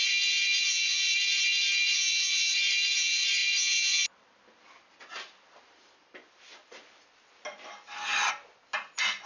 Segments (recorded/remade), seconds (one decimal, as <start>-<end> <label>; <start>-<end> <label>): 0.0-9.3 recorded

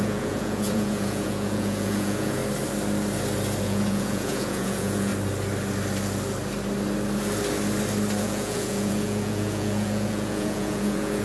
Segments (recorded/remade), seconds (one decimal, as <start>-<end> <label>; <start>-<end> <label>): 0.0-2.4 remade; 2.4-3.6 recorded; 3.6-5.1 remade; 5.1-8.2 recorded; 8.2-11.2 remade

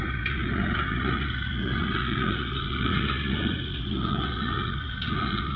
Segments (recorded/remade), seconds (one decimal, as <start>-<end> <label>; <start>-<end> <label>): 0.0-5.6 remade

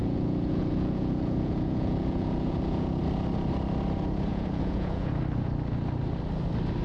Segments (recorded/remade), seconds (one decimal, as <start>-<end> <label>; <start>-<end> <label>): 0.0-3.0 remade; 3.0-4.3 recorded; 4.3-5.1 remade; 5.1-6.8 recorded

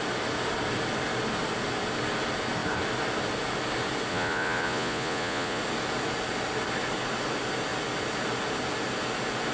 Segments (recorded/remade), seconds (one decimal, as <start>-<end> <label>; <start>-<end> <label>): 0.0-4.1 recorded; 4.1-5.6 remade; 5.6-9.5 recorded

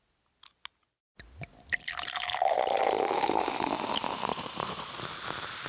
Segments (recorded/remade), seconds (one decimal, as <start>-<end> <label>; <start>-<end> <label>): 0.0-4.3 recorded; 4.3-5.0 remade; 5.0-5.7 recorded